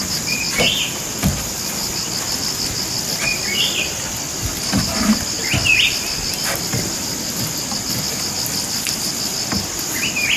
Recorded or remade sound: recorded